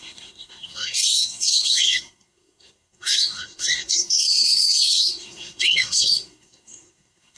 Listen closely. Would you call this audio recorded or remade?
remade